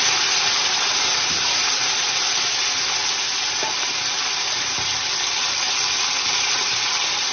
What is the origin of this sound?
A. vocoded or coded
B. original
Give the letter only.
B